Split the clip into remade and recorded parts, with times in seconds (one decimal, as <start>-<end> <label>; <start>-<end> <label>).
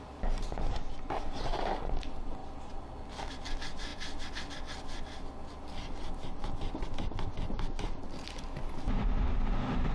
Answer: 0.0-9.9 recorded